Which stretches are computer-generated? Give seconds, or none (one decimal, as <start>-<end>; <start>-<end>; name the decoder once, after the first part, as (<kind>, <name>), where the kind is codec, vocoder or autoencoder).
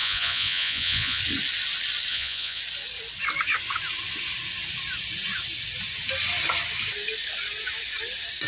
0.0-1.2 (vocoder, Vocos); 2.1-2.6